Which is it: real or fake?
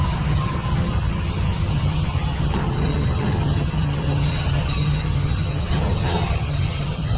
fake